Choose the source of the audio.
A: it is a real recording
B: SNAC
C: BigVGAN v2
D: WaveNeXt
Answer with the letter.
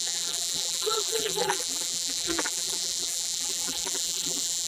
C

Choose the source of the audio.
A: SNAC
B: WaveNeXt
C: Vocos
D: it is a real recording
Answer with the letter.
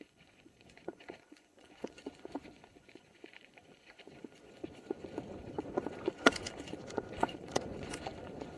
C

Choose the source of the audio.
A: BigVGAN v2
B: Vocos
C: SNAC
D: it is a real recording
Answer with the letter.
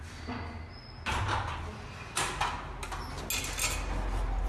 D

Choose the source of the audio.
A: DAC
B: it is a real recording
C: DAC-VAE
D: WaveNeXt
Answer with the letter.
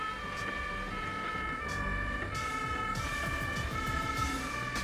B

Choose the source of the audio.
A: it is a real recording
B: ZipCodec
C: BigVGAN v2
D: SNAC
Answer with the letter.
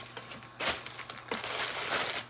A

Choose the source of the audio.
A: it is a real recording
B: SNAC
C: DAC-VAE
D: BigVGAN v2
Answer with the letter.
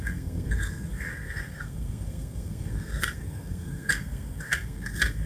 B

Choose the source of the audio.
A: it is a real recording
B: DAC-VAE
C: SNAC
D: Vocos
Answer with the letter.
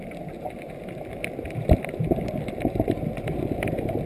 A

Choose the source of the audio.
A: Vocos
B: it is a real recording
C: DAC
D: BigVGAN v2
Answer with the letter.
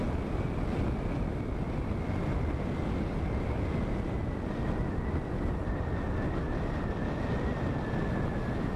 B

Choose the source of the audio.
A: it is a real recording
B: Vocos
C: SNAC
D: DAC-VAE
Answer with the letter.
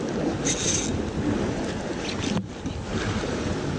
A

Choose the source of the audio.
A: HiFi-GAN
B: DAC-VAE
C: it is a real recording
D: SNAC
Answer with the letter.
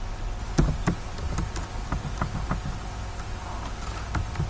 C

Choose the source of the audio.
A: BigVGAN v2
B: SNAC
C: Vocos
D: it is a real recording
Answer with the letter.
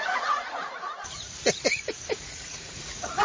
C